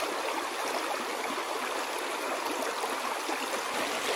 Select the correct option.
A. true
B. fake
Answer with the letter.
A